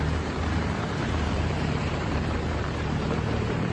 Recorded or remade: remade